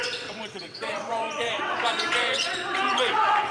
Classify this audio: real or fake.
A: fake